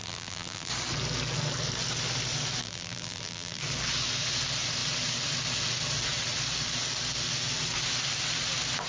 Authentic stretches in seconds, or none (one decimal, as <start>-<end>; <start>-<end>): 0.7-2.6; 3.6-8.9